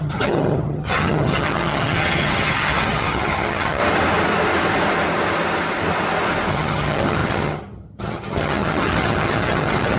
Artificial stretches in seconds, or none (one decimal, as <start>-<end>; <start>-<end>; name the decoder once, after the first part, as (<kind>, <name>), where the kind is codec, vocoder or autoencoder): 0.0-3.8 (vocoder, HiFi-GAN); 6.5-10.0